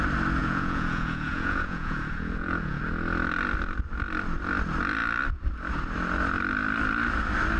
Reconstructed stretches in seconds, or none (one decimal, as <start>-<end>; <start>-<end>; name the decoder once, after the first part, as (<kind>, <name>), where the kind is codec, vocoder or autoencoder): 0.4-2.8 (vocoder, Vocos)